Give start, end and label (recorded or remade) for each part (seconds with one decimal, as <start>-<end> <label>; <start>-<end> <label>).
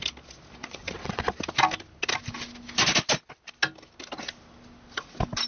0.0-0.6 recorded; 0.6-1.2 remade; 1.2-5.5 recorded